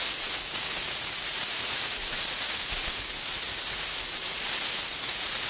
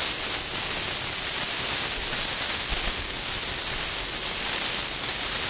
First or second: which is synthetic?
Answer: first